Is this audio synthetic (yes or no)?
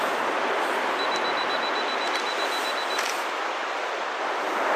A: no